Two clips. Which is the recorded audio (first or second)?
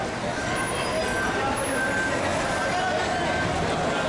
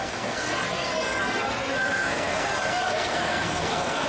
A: first